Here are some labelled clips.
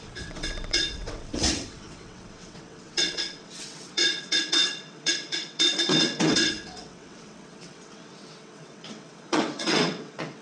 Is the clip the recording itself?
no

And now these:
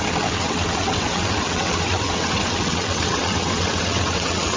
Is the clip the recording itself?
no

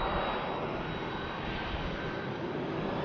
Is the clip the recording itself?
yes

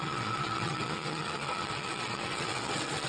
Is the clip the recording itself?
no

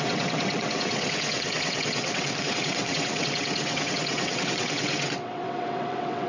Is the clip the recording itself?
no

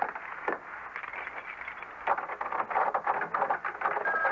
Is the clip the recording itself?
yes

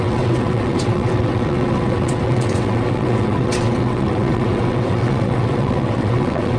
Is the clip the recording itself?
no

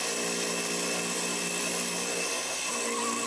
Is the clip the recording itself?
yes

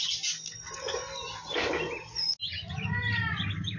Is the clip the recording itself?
yes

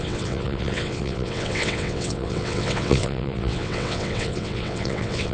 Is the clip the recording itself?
no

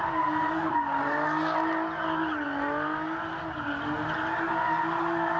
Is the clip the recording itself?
yes